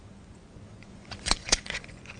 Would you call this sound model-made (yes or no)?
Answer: yes